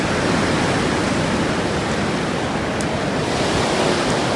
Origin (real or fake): real